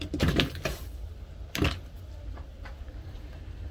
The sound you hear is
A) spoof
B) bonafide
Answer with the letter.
A